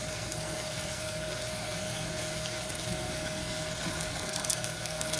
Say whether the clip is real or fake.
fake